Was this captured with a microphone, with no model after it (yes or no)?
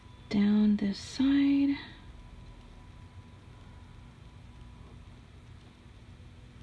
yes